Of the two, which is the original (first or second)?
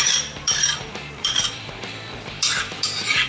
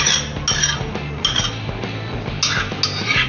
second